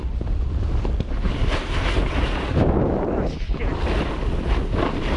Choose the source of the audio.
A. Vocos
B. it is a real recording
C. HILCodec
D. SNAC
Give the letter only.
B